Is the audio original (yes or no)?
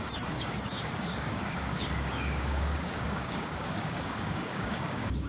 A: no